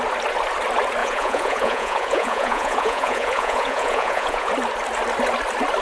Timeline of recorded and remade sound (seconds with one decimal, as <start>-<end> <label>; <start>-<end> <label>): 0.0-1.0 recorded; 1.0-4.5 remade; 4.5-5.8 recorded